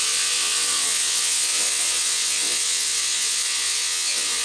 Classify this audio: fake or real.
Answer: fake